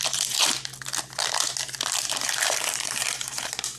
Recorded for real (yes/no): yes